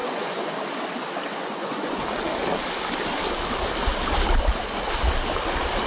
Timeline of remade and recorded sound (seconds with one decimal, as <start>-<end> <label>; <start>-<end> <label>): 0.0-0.5 remade; 0.5-1.3 recorded; 1.3-2.0 remade; 2.0-5.9 recorded

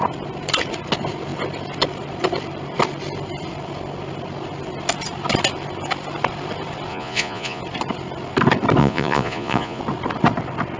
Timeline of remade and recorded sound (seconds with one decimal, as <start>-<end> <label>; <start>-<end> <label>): 0.0-6.9 recorded; 6.9-7.6 remade; 7.6-8.8 recorded; 8.8-9.8 remade; 9.8-10.8 recorded

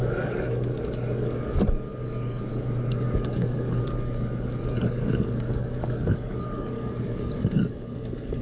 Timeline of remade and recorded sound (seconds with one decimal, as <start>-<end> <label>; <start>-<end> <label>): 0.0-8.4 remade

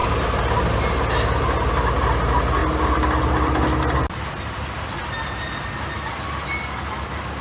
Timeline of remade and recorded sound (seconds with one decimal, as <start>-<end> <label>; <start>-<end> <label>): 0.0-7.4 recorded

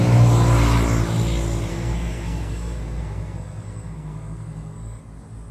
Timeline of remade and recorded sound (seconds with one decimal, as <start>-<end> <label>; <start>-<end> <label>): 0.0-1.7 recorded; 1.7-5.0 remade; 5.0-5.5 recorded